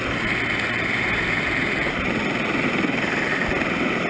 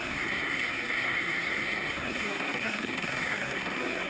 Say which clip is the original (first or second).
first